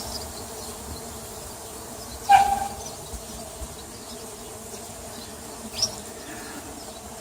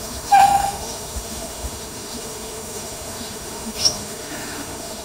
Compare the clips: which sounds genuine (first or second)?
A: first